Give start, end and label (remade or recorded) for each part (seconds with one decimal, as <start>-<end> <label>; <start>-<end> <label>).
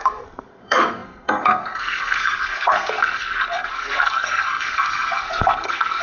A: 0.0-6.0 remade